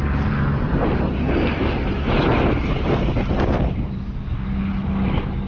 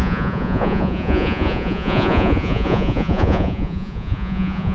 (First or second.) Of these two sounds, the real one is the first